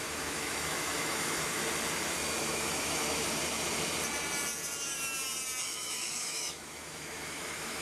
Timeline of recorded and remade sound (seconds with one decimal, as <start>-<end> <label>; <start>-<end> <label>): 0.0-1.6 remade; 1.6-2.4 recorded; 2.4-3.4 remade; 3.4-5.6 recorded; 5.6-7.8 remade